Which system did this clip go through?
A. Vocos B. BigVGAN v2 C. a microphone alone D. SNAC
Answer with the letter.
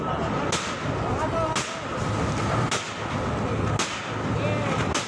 C